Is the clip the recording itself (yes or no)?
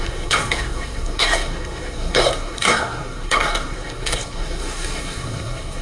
no